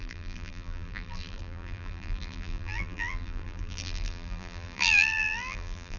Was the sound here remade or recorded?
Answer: remade